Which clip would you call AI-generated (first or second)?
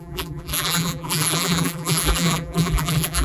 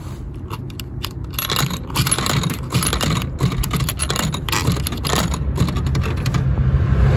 first